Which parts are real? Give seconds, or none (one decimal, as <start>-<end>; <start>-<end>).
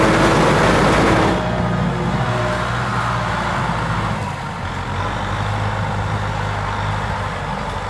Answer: 0.0-7.9